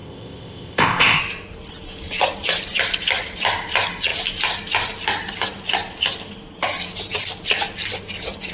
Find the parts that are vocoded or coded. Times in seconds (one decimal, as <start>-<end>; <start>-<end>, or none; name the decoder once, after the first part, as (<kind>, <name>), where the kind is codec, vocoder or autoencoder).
0.0-1.2 (codec, ZipCodec)